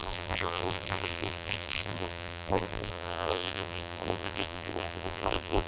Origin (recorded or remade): remade